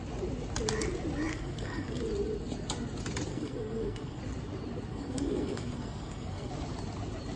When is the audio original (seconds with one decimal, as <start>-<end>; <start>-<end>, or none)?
0.0-1.3; 2.0-3.3; 4.2-4.9; 6.5-7.4

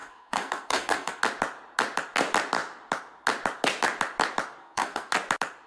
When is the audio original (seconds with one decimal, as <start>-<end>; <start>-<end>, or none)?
1.2-4.6; 5.1-5.7

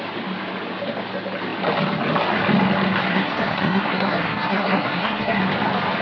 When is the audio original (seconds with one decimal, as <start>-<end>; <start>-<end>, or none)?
0.0-3.0; 5.4-6.0

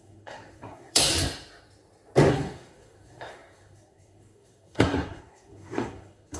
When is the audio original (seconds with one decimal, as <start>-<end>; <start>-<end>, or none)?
1.1-2.3

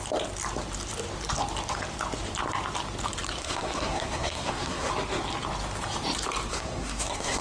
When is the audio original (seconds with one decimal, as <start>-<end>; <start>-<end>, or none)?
0.0-3.4; 4.9-6.5

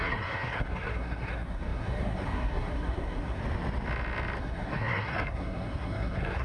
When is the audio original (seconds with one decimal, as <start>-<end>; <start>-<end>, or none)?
3.4-4.4

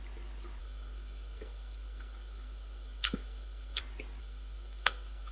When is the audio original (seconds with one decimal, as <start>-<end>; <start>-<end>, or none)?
0.0-0.6; 3.8-4.2

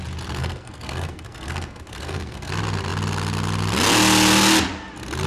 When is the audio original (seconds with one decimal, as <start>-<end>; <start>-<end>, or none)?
0.0-0.4; 2.5-5.3